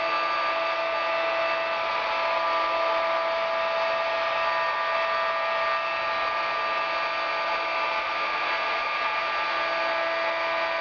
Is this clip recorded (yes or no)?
yes